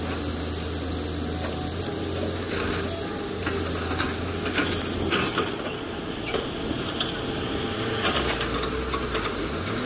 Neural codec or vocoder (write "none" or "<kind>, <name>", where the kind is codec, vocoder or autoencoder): none